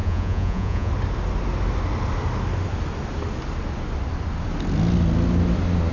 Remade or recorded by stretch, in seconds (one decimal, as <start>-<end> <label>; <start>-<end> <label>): 0.0-0.9 remade; 0.9-5.9 recorded